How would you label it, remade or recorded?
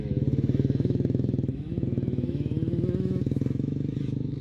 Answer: remade